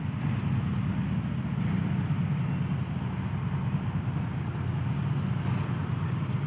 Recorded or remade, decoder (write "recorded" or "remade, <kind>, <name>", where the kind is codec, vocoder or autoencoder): recorded